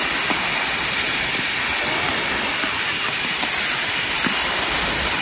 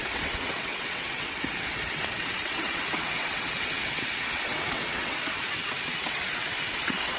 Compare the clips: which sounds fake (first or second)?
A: second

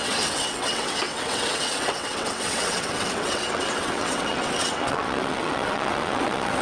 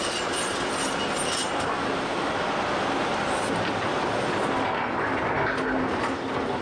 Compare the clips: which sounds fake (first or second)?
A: first